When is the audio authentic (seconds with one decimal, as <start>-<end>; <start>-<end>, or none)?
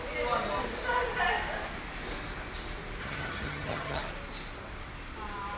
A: 0.0-3.0; 4.0-5.6